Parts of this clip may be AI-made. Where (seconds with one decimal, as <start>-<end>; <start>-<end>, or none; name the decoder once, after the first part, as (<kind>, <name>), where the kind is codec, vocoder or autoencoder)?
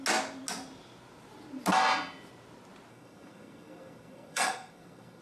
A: 2.9-5.2 (codec, SNAC)